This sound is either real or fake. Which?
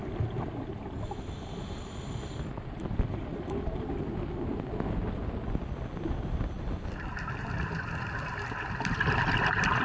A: real